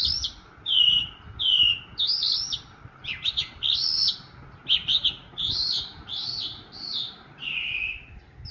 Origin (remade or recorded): recorded